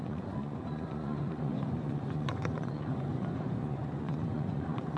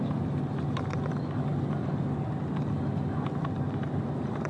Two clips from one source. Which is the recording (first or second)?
second